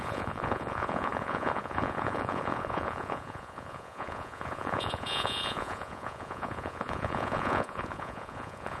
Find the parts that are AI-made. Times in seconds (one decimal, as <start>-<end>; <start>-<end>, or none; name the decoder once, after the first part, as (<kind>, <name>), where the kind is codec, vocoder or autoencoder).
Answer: 0.0-8.8 (vocoder, Vocos)